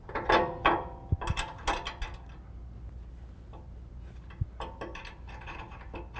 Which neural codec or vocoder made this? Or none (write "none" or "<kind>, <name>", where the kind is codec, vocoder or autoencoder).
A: none